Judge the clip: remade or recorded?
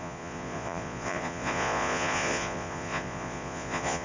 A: remade